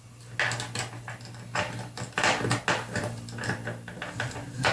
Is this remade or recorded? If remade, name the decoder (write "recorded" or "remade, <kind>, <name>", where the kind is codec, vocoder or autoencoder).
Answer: recorded